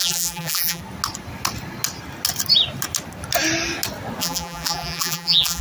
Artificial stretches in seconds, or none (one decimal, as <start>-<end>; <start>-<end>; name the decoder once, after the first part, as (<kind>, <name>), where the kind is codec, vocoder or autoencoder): 0.0-0.8 (vocoder, BigVGAN v2); 4.2-5.6